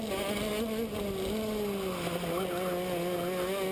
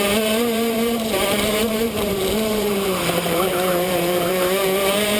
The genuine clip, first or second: first